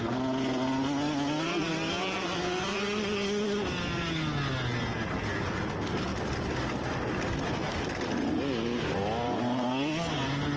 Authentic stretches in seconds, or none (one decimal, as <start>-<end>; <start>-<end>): 0.0-10.6